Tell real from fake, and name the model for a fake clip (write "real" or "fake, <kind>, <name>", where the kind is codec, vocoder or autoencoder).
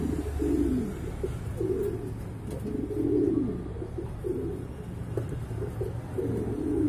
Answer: real